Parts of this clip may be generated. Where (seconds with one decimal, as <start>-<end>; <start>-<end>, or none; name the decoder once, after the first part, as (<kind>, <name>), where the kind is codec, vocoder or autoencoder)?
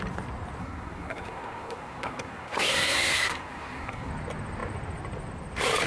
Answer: 0.6-4.1 (codec, SNAC)